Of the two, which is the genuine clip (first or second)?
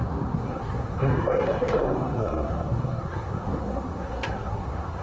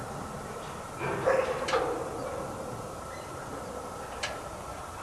second